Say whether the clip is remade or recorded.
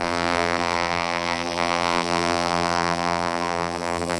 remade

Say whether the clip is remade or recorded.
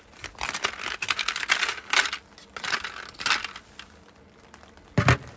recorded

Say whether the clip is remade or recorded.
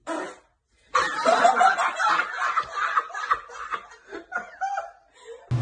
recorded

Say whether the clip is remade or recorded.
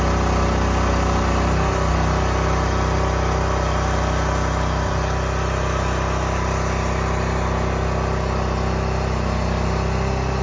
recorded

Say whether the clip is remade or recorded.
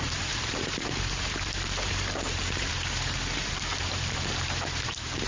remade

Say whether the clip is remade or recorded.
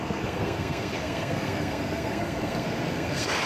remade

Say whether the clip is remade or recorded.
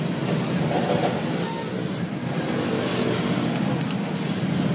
recorded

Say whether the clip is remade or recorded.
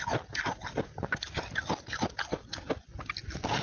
recorded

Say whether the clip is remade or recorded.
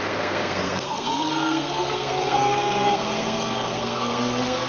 remade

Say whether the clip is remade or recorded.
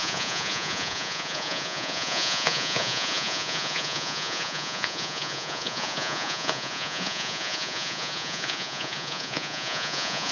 remade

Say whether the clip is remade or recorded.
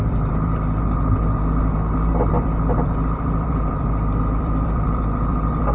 remade